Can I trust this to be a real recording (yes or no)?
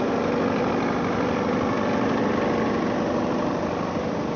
yes